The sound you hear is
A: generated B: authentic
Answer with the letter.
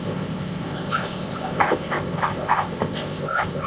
A